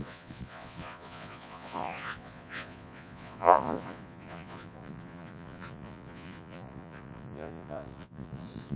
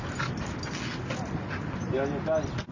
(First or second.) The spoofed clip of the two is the first